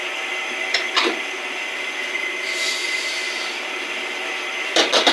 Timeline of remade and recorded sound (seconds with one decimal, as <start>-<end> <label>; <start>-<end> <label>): 0.0-5.1 remade